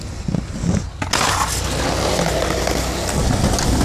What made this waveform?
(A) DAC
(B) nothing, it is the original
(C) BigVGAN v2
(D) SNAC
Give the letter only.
B